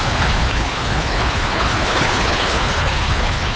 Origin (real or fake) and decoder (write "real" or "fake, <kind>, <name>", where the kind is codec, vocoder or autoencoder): fake, codec, HILCodec